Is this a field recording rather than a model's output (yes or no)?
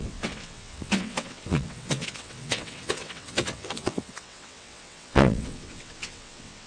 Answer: no